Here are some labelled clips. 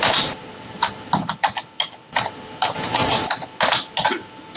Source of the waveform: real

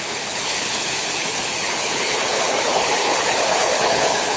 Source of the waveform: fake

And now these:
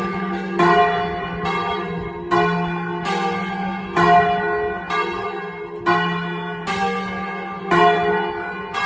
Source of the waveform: real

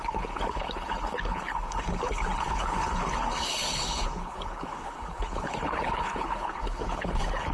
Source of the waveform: fake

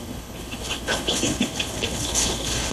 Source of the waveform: fake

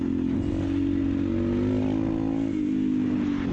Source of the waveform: real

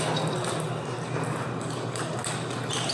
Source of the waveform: real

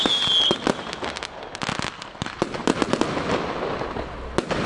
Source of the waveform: real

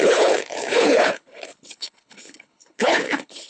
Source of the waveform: fake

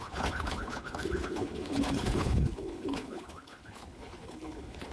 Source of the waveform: fake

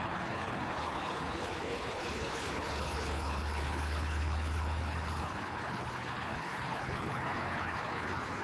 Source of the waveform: fake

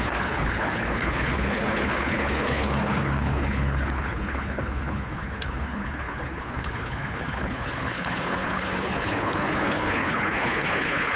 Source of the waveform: fake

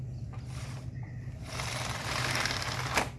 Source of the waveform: real